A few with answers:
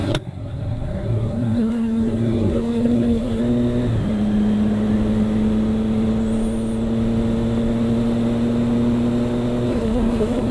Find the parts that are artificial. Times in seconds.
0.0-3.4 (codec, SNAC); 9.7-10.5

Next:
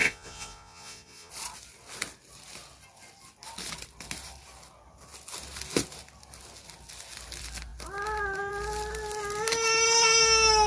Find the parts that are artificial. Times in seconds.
0.0-1.3 (vocoder, Vocos)

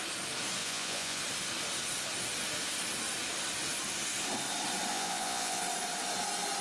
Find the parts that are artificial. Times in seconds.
0.6-1.2 (vocoder, Vocos); 4.9-5.6

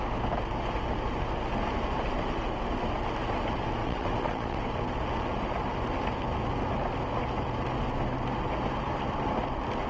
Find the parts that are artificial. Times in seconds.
3.8-4.6 (vocoder, WaveNeXt)